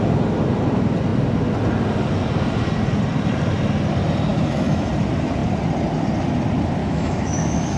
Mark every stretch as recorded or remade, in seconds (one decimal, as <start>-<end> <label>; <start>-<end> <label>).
0.0-4.3 recorded; 4.3-4.9 remade; 4.9-6.8 recorded; 6.8-7.8 remade